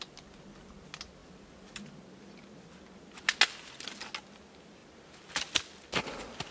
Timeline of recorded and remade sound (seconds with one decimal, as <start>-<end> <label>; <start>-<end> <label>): 0.0-6.5 recorded